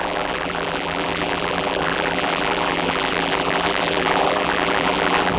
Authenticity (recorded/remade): remade